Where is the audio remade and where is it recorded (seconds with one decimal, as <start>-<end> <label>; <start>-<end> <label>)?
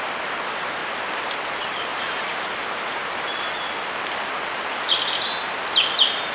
0.0-1.9 recorded; 1.9-2.5 remade; 2.5-6.3 recorded